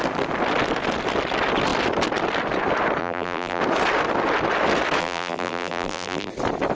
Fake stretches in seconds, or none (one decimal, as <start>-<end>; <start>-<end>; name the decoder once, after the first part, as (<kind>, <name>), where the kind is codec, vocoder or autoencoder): 3.0-3.6 (vocoder, BigVGAN v2); 5.0-6.3